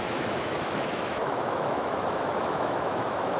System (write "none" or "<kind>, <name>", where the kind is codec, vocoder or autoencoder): autoencoder, DAC-VAE